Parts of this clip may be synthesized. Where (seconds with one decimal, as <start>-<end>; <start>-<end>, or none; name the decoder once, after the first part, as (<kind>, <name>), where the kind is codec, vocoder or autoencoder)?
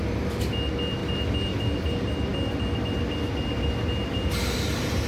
none